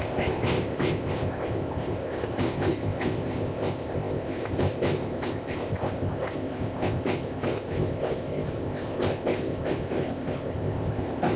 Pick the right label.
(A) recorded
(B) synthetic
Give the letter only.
B